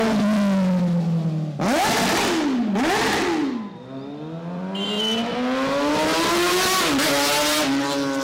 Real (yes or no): yes